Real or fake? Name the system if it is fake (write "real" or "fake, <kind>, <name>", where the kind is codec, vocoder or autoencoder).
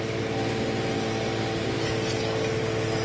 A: real